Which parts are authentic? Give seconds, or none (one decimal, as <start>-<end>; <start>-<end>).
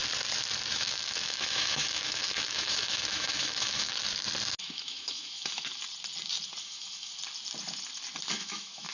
0.0-0.7; 3.9-4.6; 5.7-6.6; 7.1-8.3